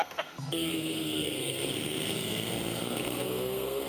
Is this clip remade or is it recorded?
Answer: remade